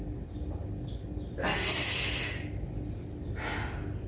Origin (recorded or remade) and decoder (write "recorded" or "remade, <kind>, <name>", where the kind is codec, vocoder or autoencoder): recorded